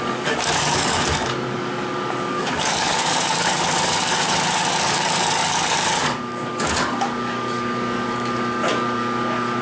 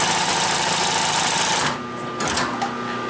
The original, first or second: second